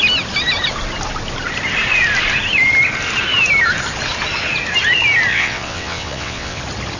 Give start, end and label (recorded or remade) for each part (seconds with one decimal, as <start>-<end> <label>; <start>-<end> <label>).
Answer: 0.0-5.3 recorded; 5.3-6.6 remade; 6.6-7.0 recorded